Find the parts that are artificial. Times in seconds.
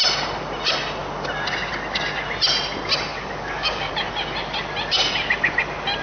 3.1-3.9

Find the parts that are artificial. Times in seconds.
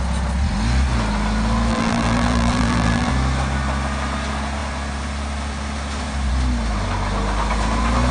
1.7-3.1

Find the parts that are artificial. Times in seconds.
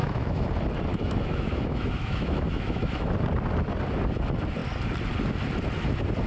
0.0-0.5; 0.9-3.1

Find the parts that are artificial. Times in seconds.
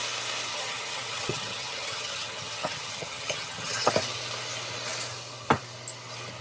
0.5-3.9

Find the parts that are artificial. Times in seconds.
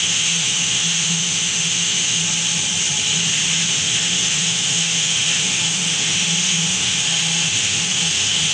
0.0-2.2; 3.7-8.5